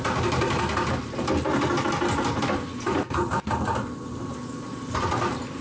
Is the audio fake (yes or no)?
no